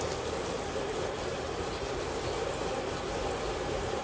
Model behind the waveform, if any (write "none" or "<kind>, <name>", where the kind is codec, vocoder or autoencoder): none